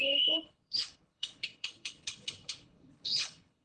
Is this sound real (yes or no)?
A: no